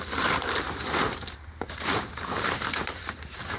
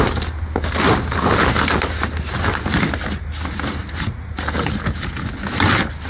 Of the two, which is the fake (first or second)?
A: first